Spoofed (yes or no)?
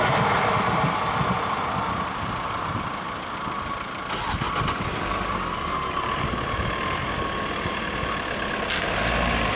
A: no